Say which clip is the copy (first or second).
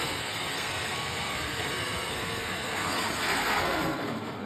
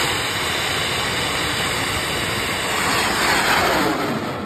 first